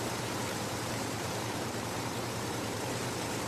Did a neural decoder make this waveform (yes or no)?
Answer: yes